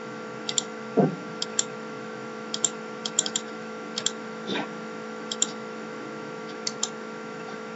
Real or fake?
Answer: fake